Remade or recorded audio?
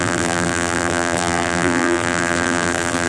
remade